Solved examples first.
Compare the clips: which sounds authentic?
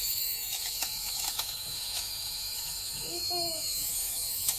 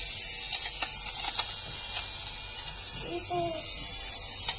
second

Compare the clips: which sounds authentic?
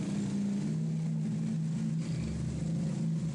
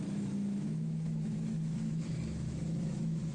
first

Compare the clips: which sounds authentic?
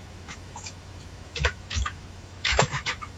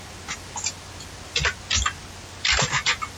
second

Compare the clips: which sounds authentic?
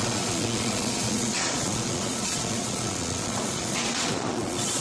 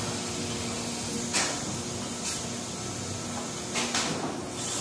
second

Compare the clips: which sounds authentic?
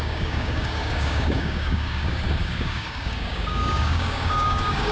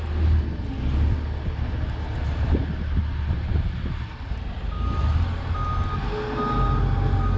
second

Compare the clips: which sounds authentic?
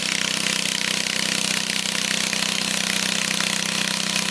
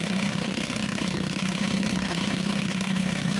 first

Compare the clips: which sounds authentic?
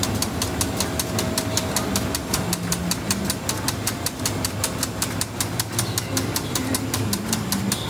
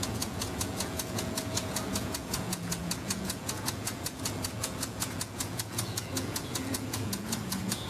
first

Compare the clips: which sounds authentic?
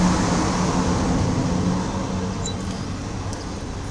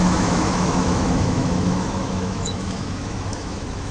first